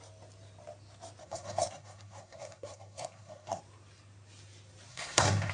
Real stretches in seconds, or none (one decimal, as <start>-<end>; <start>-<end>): 0.0-1.2; 3.6-4.9